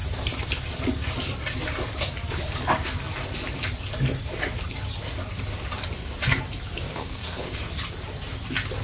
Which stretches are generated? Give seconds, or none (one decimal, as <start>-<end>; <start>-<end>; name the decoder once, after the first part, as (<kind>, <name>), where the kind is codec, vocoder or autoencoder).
6.9-7.7 (codec, SNAC)